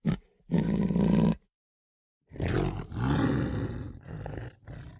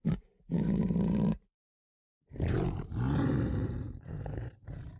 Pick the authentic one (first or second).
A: first